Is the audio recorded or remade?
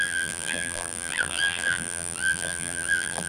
remade